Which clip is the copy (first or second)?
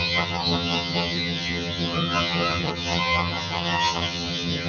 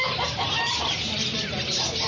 first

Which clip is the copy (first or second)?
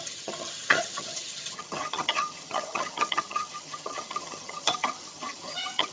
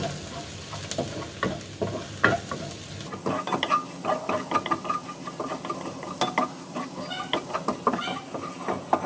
first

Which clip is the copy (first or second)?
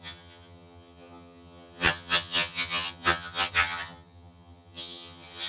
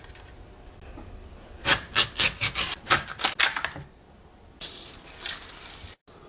first